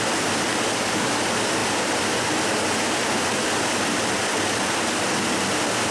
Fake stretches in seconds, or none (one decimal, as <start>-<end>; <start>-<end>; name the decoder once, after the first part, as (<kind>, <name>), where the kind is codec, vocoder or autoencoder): 0.5-1.2 (codec, DAC)

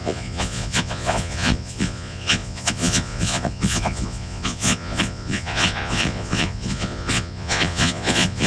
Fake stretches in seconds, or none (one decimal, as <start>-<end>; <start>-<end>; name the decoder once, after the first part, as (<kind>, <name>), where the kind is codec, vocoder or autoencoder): 0.0-8.5 (vocoder, Vocos)

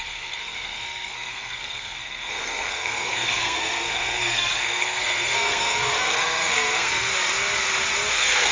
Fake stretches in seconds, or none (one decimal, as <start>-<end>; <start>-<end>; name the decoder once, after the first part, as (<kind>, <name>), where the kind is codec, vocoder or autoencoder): 0.0-7.1 (codec, SNAC); 8.1-8.5

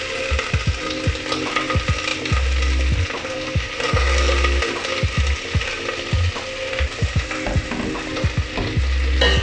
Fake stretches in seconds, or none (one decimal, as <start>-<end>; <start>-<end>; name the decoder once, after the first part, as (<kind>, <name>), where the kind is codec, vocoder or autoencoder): none

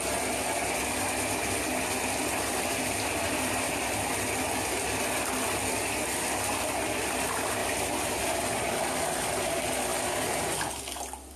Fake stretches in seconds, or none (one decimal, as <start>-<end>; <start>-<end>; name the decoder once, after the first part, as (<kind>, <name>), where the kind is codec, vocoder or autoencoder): 7.6-9.3 (vocoder, BigVGAN v2); 9.9-10.5